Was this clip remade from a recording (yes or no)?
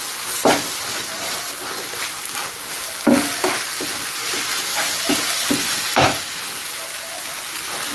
no